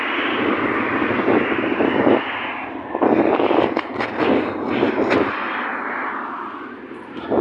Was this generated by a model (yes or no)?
no